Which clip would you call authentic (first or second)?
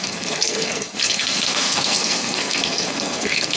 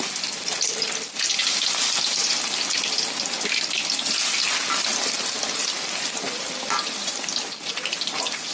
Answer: second